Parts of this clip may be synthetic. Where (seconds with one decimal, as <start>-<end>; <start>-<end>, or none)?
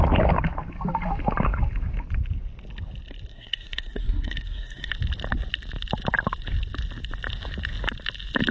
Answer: 3.3-4.9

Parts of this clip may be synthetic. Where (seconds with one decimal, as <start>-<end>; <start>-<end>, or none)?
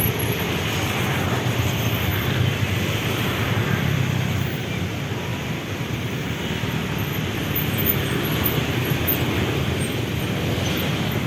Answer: 0.0-11.3